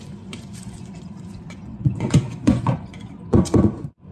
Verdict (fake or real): fake